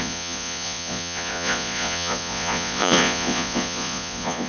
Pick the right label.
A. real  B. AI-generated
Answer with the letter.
B